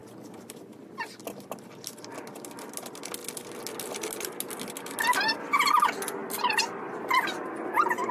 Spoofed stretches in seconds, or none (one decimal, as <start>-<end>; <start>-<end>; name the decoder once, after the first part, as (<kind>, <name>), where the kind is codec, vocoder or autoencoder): none